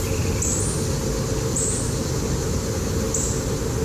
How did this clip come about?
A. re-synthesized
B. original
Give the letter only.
B